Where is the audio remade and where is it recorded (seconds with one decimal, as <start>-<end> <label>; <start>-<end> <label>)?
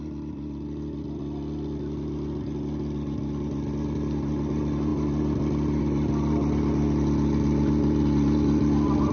0.0-9.1 recorded